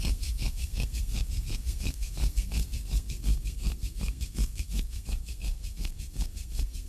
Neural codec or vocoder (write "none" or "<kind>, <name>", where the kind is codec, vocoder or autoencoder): codec, SNAC